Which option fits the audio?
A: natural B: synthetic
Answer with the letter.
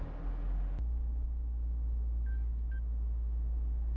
A